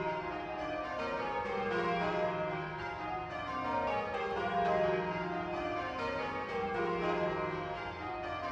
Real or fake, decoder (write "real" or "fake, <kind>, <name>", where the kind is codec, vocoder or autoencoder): real